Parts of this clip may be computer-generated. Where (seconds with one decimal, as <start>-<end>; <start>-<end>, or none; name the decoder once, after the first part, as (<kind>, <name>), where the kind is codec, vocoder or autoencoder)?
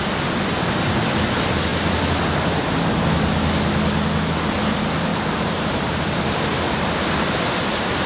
5.1-6.0 (vocoder, BigVGAN v2)